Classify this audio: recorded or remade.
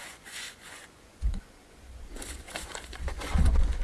remade